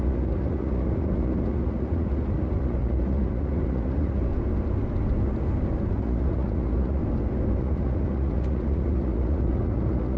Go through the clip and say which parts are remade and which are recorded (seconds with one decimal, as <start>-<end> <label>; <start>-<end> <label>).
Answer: 0.0-4.3 remade; 4.3-5.9 recorded; 5.9-7.0 remade; 7.0-7.6 recorded; 7.6-10.2 remade